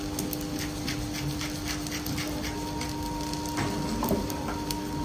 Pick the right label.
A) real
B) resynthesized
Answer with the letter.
A